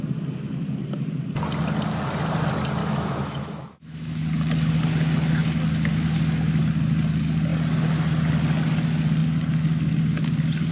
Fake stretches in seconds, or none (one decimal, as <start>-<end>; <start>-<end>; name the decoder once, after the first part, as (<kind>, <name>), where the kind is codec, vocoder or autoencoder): 2.8-4.2 (autoencoder, DAC-VAE); 5.9-6.6